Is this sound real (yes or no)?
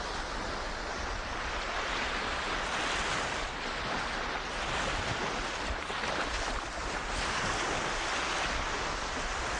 yes